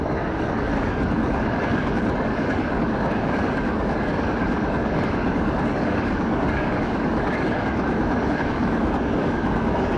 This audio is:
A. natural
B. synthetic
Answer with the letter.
B